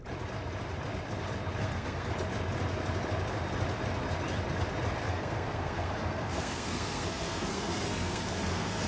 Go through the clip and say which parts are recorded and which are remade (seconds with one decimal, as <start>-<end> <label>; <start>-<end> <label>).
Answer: 0.0-1.6 recorded; 1.6-2.1 remade; 2.1-5.1 recorded; 5.1-8.9 remade